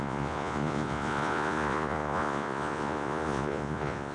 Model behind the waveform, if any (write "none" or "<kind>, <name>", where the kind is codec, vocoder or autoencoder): vocoder, Vocos